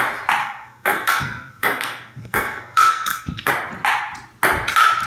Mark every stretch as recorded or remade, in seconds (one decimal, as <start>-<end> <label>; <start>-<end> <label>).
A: 0.0-0.4 recorded; 0.4-3.5 remade; 3.5-5.1 recorded